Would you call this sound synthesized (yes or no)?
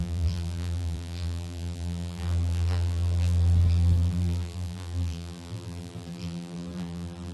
yes